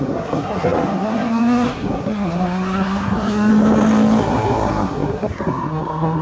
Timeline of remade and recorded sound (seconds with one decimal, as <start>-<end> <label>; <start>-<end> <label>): 0.0-3.5 remade; 3.5-4.2 recorded; 4.2-6.2 remade